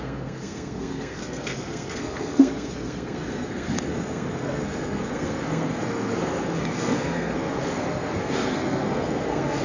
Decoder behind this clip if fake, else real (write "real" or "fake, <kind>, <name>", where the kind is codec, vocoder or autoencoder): fake, codec, SNAC